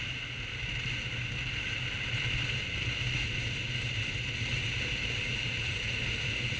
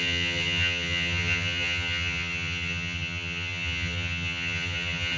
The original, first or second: first